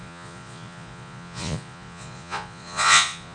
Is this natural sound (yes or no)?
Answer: no